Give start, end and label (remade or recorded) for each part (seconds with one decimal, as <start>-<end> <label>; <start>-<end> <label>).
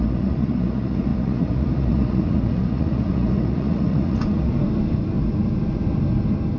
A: 0.0-4.2 remade; 4.2-6.6 recorded